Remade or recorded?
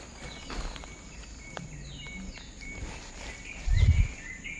recorded